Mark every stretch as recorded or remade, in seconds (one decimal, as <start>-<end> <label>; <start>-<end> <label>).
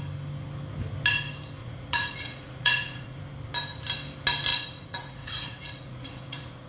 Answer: 0.0-1.6 recorded; 1.6-3.2 remade; 3.2-4.5 recorded; 4.5-6.7 remade